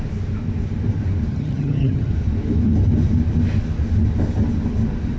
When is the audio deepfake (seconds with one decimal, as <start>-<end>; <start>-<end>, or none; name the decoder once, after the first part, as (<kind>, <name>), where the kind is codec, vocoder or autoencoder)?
1.3-2.1 (vocoder, HiFi-GAN)